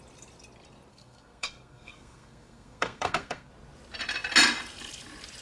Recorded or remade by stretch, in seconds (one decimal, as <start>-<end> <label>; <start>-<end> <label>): 0.0-0.9 recorded; 0.9-3.5 remade; 3.5-5.4 recorded

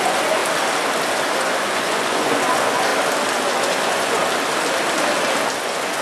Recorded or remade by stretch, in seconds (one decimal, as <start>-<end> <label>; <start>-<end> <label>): 0.0-0.4 remade; 0.4-1.4 recorded; 1.4-2.9 remade; 2.9-3.4 recorded; 3.4-4.2 remade; 4.2-5.6 recorded; 5.6-6.0 remade

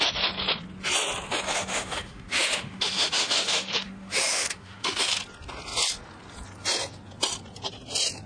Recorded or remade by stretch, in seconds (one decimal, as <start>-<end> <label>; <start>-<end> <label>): 0.0-1.5 recorded; 1.5-5.0 remade; 5.0-8.3 recorded

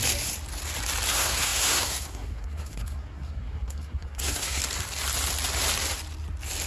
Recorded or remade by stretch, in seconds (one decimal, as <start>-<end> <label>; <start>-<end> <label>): 0.0-1.1 recorded; 1.1-4.6 remade; 4.6-6.7 recorded

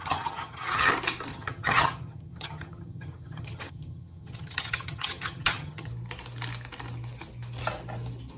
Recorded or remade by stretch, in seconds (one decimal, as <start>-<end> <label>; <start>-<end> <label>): 0.0-0.9 remade; 0.9-1.3 recorded; 1.3-5.9 remade; 5.9-8.4 recorded

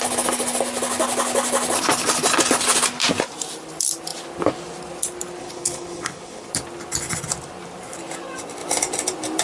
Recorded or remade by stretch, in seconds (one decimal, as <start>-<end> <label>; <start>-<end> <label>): 0.0-5.4 recorded; 5.4-6.5 remade; 6.5-9.4 recorded

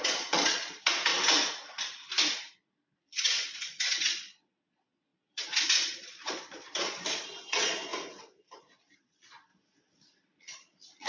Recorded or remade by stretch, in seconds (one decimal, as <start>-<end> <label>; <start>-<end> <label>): 0.0-1.1 remade; 1.1-3.0 recorded; 3.0-7.9 remade; 7.9-8.6 recorded; 8.6-11.1 remade

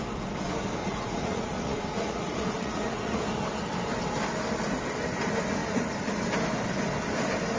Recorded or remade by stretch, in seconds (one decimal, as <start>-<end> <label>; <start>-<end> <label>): 0.0-0.8 recorded; 0.8-3.2 remade; 3.2-5.6 recorded; 5.6-6.1 remade; 6.1-7.6 recorded